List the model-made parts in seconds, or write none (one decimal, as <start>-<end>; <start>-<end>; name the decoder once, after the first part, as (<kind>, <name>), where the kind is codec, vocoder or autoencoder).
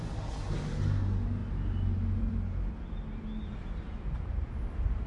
none